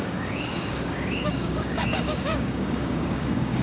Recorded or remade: remade